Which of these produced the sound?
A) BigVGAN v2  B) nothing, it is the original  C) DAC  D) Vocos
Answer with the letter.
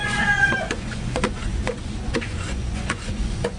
D